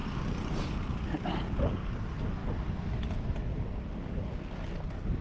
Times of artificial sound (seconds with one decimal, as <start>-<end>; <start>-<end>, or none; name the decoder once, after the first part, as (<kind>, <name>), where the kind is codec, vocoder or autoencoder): 0.0-0.5 (vocoder, BigVGAN v2)